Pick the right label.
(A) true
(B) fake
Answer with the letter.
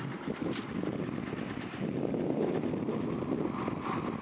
A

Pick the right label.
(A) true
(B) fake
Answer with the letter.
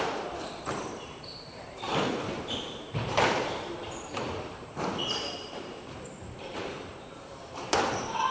B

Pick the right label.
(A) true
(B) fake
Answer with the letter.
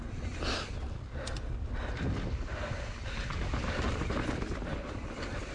A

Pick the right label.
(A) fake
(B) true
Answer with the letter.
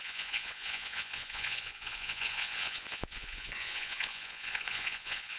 A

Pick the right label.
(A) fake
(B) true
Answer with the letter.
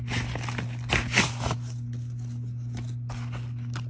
B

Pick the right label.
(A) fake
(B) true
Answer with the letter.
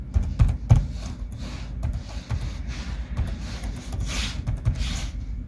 B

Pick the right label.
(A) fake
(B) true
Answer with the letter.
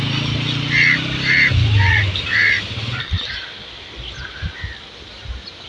B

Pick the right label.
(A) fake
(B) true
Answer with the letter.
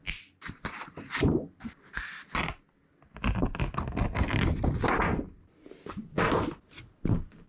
B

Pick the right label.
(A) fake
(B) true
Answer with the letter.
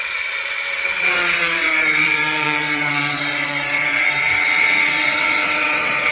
A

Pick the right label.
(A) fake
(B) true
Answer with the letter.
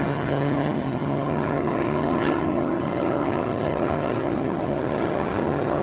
A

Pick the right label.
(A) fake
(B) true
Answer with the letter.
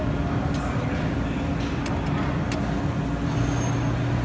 B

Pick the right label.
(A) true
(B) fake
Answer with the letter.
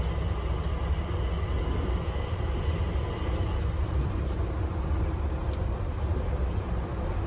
A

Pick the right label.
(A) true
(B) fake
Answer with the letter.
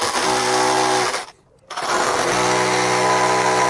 A